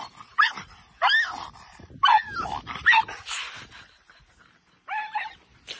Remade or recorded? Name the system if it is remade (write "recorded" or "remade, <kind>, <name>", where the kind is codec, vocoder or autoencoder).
recorded